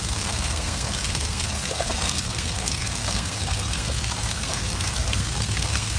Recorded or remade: remade